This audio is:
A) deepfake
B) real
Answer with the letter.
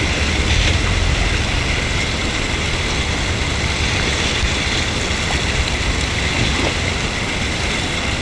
B